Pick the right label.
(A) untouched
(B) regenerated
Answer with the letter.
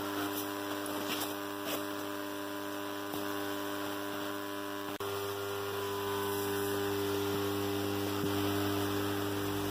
A